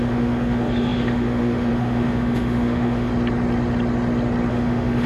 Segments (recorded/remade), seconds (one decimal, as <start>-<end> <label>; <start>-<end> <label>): 0.0-3.1 remade; 3.1-4.5 recorded; 4.5-5.1 remade